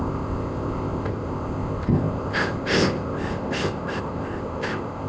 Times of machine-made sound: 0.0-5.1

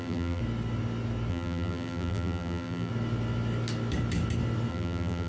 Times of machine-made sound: 0.0-0.4; 1.3-2.9; 4.7-5.3

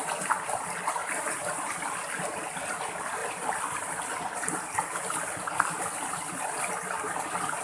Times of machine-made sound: none

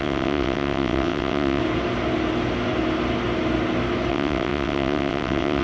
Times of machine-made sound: 0.0-1.6; 4.1-5.6